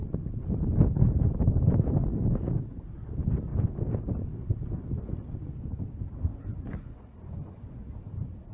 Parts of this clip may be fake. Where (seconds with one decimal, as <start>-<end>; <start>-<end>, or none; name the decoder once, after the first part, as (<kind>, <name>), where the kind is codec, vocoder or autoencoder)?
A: 6.3-7.9 (vocoder, Vocos)